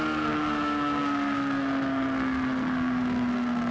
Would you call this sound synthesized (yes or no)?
yes